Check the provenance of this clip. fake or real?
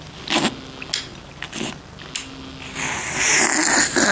real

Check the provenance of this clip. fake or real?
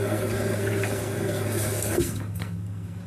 fake